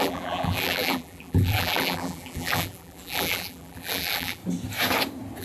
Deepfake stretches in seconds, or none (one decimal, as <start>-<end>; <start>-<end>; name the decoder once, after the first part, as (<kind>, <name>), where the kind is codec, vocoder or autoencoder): 0.0-4.4 (vocoder, BigVGAN v2)

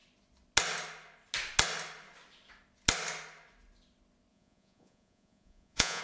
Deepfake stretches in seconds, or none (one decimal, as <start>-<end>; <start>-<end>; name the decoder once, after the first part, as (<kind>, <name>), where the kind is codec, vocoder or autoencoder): 4.3-6.0 (vocoder, Vocos)

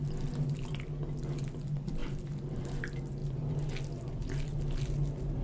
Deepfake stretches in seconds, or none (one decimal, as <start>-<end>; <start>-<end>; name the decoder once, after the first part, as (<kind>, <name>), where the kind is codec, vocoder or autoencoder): none

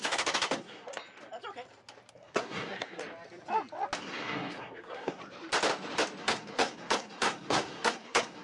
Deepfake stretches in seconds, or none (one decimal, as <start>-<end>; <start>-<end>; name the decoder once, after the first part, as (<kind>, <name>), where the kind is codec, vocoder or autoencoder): 0.0-1.0 (codec, SNAC); 2.1-3.0; 4.0-5.2; 6.2-8.4

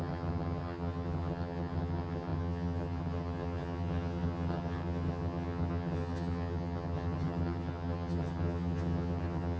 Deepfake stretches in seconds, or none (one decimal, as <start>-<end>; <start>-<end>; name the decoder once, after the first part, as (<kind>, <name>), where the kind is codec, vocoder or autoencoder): 0.0-9.6 (vocoder, HiFi-GAN)

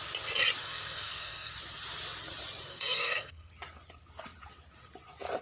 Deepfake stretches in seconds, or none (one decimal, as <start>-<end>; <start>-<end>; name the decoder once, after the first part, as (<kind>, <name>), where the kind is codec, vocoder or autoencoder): 0.6-1.5 (codec, SNAC); 2.7-3.5

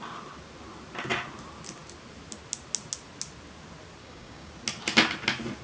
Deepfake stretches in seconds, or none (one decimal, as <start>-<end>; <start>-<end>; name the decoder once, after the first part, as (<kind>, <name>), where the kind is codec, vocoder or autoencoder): 4.0-4.5 (codec, DAC)